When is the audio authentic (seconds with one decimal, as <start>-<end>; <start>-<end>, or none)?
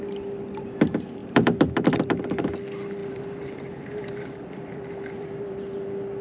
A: 0.0-1.2; 2.5-3.0; 5.4-6.2